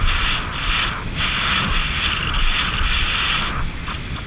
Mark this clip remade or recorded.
recorded